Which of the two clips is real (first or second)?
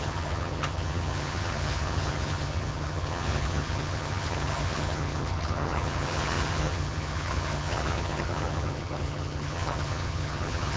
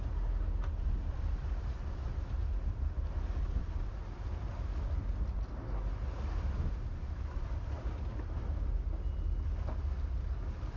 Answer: second